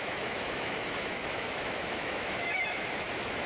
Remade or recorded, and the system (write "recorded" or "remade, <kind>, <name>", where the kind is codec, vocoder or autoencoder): remade, autoencoder, DAC-VAE